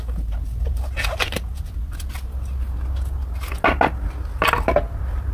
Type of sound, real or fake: real